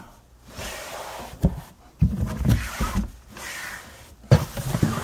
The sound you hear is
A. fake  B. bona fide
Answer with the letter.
B